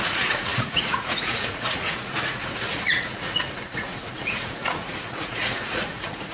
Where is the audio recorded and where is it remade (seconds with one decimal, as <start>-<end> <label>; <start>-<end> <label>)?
0.0-6.3 remade